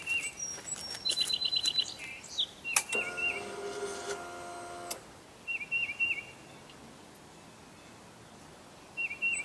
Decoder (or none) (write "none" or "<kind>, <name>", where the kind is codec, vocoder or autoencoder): none